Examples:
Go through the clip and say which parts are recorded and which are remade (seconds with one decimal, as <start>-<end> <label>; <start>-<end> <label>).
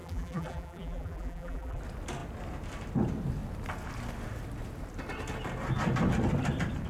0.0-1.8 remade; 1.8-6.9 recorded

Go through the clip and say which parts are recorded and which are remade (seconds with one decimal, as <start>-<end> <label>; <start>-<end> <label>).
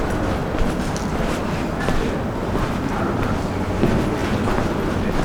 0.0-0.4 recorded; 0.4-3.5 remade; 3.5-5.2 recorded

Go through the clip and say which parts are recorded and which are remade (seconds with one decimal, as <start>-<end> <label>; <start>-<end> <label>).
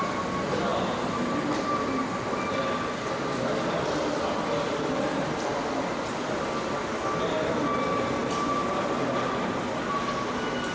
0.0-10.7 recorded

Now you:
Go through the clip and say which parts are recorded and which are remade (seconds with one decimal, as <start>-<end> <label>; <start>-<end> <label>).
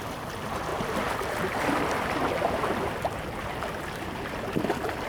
0.0-5.1 recorded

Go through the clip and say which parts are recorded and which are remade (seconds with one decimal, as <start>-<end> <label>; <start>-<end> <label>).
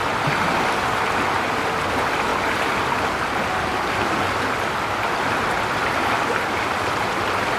0.0-2.3 remade; 2.3-5.9 recorded; 5.9-7.6 remade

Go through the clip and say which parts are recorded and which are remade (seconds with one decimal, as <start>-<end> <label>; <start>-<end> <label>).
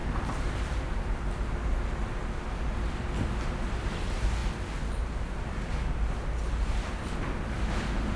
0.0-8.2 recorded